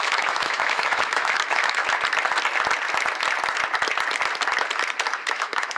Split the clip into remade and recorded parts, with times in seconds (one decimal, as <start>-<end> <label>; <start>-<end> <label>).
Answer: 0.0-1.8 remade; 1.8-5.3 recorded; 5.3-5.8 remade